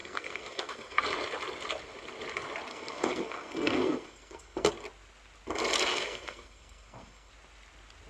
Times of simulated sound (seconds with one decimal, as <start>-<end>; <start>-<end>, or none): 0.0-1.0; 2.7-4.7; 5.9-7.3